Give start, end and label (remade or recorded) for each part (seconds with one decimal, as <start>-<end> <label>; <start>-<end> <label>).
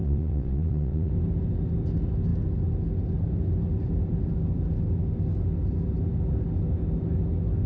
0.0-1.1 remade; 1.1-7.7 recorded